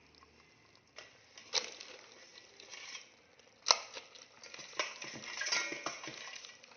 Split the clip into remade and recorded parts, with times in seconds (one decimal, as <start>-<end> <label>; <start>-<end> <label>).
0.0-6.8 recorded